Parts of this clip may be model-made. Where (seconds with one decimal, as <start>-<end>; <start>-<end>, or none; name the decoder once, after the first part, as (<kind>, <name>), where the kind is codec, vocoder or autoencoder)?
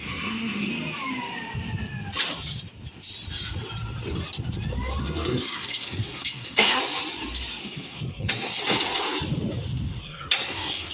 0.0-0.7 (codec, SNAC); 5.0-6.8; 7.6-8.6; 10.0-10.9